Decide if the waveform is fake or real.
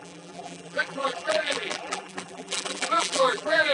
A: fake